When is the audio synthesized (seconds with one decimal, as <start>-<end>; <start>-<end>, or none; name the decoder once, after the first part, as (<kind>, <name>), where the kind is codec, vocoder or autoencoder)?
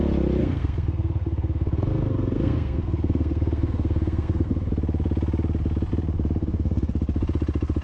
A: 0.4-4.7 (codec, SNAC); 6.4-6.9